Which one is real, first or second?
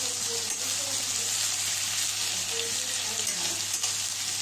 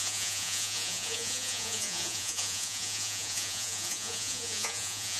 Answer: first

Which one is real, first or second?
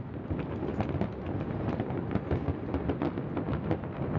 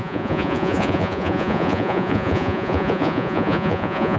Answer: first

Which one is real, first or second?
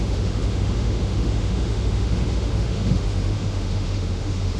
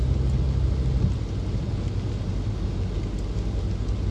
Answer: second